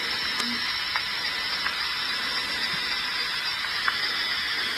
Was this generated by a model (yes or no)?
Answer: no